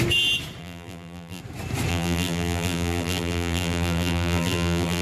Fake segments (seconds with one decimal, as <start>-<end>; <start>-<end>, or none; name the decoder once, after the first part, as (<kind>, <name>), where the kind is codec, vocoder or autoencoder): 0.6-1.4 (vocoder, BigVGAN v2); 1.9-5.0